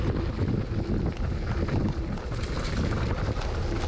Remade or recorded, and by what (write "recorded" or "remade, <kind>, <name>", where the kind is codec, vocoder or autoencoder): recorded